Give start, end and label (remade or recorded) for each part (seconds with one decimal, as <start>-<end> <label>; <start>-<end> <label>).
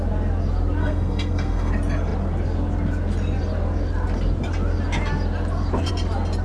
0.0-0.8 recorded; 0.8-1.7 remade; 1.7-6.4 recorded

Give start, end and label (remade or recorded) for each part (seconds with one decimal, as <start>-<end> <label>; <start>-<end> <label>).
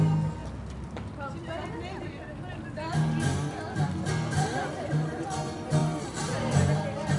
0.0-5.8 recorded; 5.8-6.4 remade; 6.4-7.2 recorded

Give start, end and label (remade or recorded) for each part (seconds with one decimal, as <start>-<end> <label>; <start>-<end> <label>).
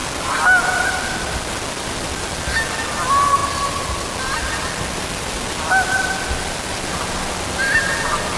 0.0-8.4 recorded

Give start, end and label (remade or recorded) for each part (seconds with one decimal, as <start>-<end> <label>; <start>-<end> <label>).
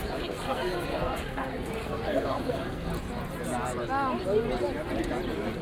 0.0-2.9 remade; 2.9-5.6 recorded